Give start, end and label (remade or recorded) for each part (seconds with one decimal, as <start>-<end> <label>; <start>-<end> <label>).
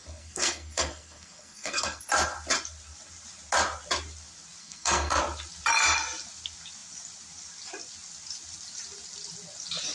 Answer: 0.0-2.0 remade; 2.0-4.6 recorded; 4.6-5.2 remade; 5.2-9.9 recorded